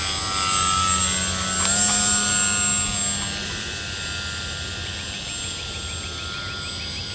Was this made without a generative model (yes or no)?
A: yes